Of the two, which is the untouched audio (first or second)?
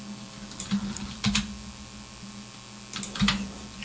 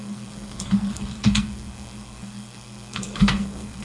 first